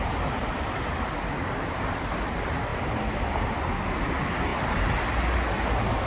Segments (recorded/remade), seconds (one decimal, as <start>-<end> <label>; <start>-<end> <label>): 0.0-2.7 remade; 2.7-4.0 recorded; 4.0-4.5 remade; 4.5-6.1 recorded